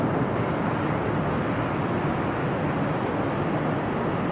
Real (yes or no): yes